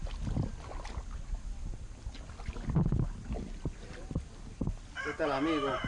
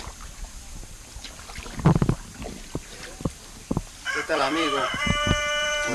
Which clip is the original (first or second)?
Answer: first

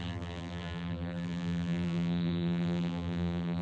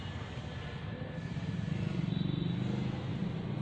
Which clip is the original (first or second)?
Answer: second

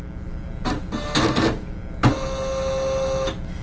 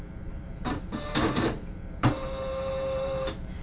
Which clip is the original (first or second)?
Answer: first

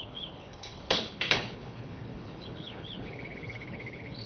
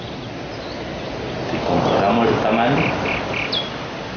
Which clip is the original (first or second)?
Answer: second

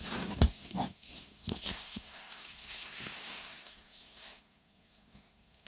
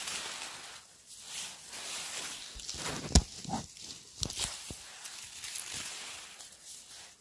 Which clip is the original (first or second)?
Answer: second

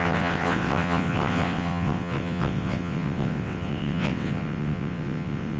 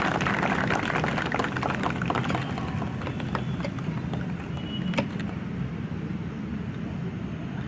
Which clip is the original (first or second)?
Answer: second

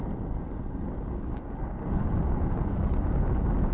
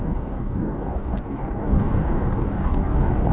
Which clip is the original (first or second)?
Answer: first